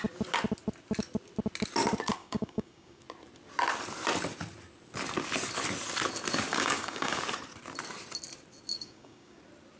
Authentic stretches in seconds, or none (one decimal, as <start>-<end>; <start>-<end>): 0.0-2.2; 3.0-6.5; 7.2-8.7; 9.4-9.8